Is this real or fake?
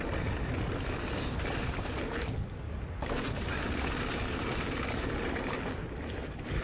real